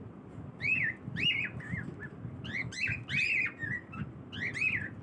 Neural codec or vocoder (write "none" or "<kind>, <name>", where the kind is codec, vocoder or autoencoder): none